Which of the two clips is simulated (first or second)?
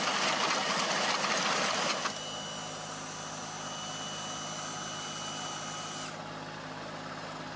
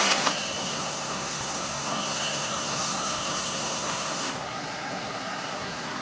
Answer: second